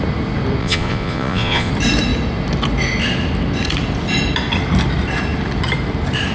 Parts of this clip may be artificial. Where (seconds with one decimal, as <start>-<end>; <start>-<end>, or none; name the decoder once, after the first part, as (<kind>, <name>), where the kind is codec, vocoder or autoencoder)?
0.6-1.7 (vocoder, Vocos)